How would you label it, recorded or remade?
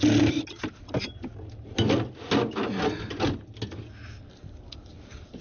recorded